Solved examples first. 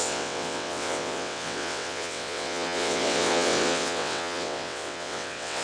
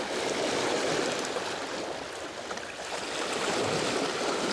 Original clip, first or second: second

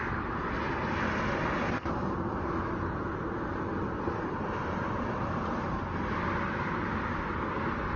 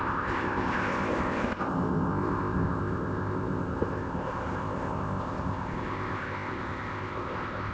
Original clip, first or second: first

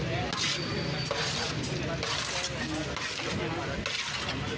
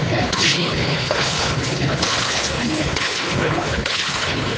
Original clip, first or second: first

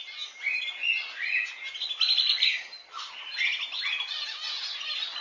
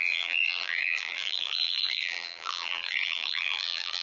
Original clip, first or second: first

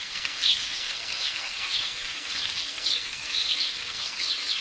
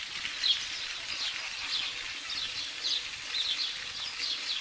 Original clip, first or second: second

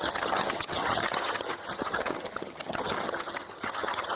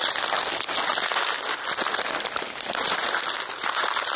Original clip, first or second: second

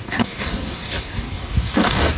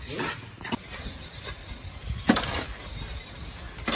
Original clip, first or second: second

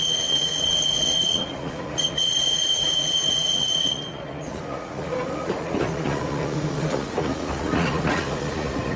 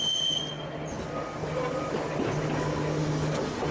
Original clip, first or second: second